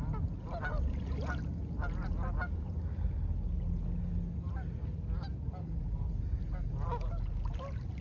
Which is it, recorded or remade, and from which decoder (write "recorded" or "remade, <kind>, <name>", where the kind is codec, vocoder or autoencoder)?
recorded